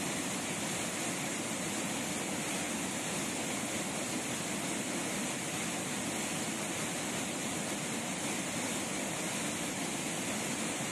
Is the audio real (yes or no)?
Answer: yes